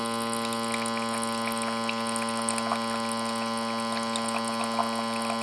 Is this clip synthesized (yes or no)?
no